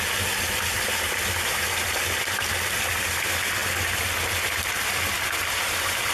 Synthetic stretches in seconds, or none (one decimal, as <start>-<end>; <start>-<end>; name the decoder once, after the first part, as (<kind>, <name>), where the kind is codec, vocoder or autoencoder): none